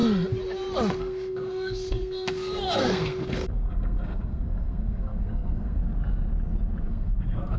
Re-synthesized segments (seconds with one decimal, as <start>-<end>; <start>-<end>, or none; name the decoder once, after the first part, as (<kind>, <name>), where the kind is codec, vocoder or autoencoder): 0.9-5.8 (codec, SNAC); 6.9-7.6